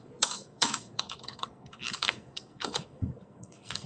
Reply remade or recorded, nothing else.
remade